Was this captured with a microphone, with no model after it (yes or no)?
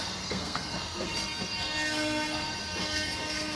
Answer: no